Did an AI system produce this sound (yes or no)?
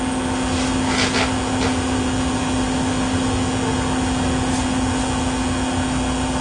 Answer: no